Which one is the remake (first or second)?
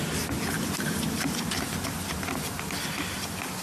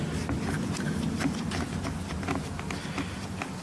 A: first